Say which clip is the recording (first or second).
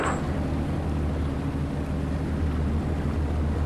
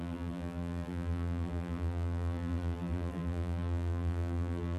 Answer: first